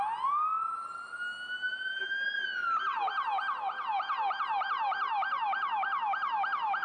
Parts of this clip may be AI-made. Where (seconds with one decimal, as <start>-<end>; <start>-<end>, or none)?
none